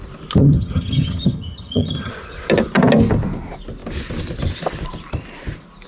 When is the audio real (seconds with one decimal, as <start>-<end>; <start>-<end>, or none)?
0.0-0.4; 2.1-5.9